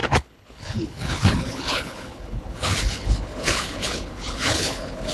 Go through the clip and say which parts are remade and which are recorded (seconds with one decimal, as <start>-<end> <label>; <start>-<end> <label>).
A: 0.0-5.1 remade